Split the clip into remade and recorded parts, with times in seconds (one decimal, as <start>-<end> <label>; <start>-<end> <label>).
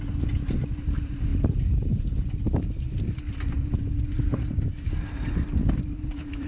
0.0-6.5 recorded